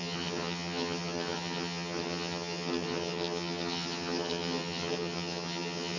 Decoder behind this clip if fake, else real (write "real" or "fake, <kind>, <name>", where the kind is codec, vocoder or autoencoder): fake, vocoder, HiFi-GAN